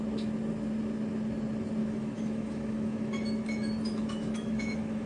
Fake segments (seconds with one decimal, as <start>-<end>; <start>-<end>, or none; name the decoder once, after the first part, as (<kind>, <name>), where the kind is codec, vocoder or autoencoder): 1.8-5.1 (autoencoder, DAC-VAE)